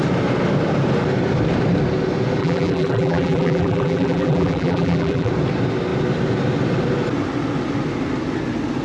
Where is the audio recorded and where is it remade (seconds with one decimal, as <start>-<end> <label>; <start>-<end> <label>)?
0.0-2.4 recorded; 2.4-5.3 remade; 5.3-8.8 recorded